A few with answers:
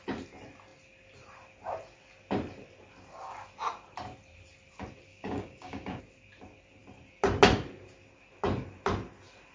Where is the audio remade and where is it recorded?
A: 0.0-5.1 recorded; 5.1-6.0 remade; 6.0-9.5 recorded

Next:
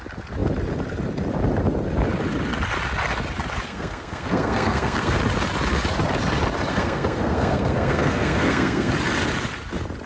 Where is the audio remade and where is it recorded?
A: 0.0-3.7 recorded; 3.7-5.2 remade; 5.2-6.7 recorded; 6.7-8.9 remade; 8.9-10.1 recorded

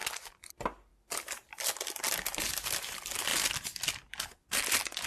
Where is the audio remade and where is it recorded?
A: 0.0-5.1 recorded